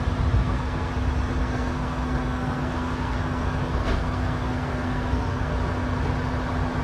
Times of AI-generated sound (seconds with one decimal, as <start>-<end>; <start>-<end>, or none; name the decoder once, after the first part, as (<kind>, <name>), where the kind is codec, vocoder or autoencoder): 0.4-0.9 (codec, SNAC); 1.4-5.5